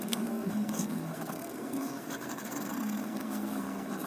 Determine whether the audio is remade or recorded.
remade